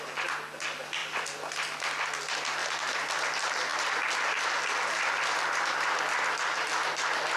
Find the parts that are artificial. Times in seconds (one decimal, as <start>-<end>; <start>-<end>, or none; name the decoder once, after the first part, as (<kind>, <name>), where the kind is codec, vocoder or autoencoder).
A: 1.0-1.8 (vocoder, BigVGAN v2); 2.6-3.2; 3.7-5.6

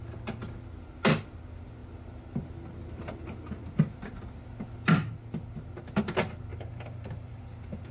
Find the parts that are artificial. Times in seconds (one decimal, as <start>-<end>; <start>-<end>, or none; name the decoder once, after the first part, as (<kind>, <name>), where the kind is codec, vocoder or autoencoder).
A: 6.5-7.4 (vocoder, BigVGAN v2)